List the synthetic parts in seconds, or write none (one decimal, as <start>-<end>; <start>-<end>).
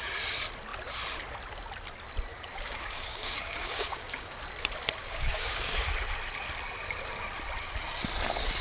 2.3-4.4; 5.0-5.9